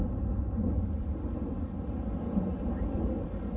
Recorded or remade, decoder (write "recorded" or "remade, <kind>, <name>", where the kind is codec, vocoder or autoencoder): recorded